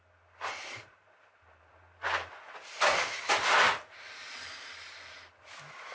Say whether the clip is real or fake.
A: real